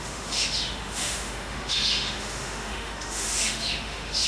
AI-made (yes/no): yes